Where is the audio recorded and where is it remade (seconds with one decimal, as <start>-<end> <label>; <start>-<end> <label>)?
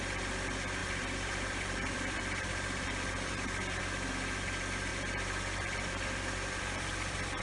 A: 0.0-0.8 recorded; 0.8-3.8 remade; 3.8-4.9 recorded; 4.9-7.4 remade